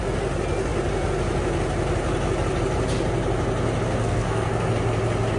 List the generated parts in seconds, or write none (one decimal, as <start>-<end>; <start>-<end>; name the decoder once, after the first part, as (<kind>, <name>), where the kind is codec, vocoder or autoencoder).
4.0-4.7 (codec, SNAC)